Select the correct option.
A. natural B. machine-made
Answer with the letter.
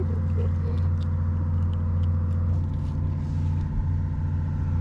A